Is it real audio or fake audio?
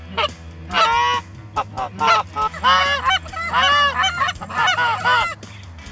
real